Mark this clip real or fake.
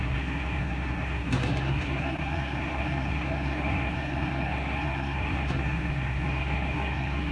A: fake